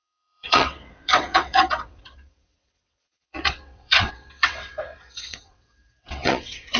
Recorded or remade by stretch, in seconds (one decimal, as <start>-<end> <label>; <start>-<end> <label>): 0.0-6.8 remade